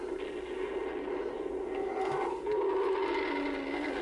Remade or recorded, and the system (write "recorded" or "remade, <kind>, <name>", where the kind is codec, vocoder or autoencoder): recorded